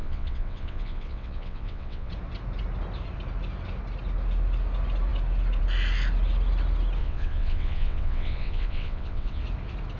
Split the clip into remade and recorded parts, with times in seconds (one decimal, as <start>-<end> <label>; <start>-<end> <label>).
0.0-2.1 remade; 2.1-7.0 recorded; 7.0-9.4 remade; 9.4-10.0 recorded